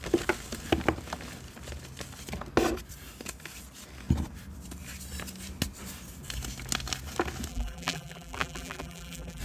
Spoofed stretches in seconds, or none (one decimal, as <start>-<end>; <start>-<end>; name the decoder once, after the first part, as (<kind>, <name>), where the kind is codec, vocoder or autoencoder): 7.5-9.4 (vocoder, BigVGAN v2)